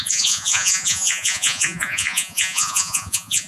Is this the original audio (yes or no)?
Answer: no